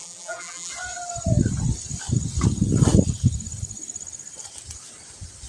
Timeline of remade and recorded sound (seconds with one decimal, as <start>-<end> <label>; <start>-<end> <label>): 0.0-0.7 remade; 0.7-5.5 recorded